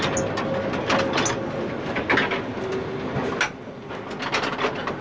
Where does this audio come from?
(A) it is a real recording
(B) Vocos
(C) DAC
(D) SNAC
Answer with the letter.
A